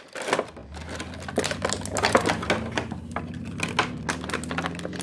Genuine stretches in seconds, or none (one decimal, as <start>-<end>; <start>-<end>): 0.0-5.0

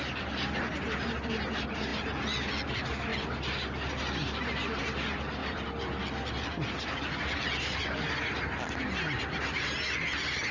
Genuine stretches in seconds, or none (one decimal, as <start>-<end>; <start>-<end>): 0.0-10.5

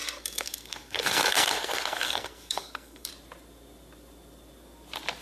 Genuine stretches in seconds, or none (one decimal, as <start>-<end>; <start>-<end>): 3.1-5.2

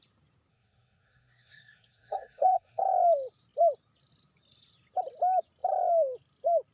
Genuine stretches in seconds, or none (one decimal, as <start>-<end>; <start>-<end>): 0.0-0.5; 2.8-6.7